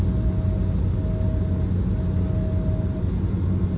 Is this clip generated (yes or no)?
no